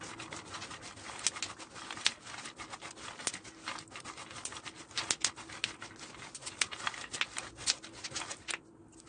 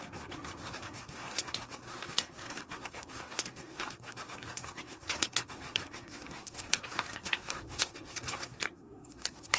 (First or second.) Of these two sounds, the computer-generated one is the second